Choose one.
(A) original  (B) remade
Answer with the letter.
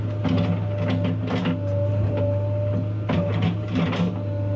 A